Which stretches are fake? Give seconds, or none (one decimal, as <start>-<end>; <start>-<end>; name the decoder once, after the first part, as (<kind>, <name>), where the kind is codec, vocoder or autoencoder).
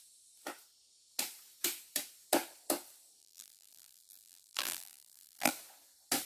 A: 3.2-5.5 (vocoder, BigVGAN v2)